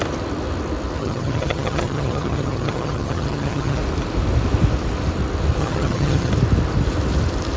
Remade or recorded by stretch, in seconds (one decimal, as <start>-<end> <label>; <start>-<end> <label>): 0.0-1.0 recorded; 1.0-3.8 remade; 3.8-5.6 recorded; 5.6-6.3 remade; 6.3-7.6 recorded